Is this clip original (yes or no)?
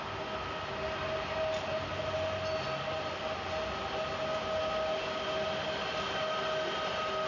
yes